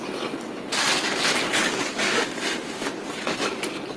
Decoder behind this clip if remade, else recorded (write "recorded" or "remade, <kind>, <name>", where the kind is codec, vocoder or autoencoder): recorded